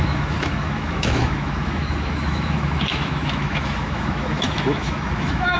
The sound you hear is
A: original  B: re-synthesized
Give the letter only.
B